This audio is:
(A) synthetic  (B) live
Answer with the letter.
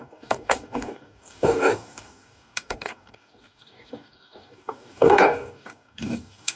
A